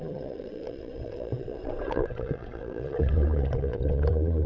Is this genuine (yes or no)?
no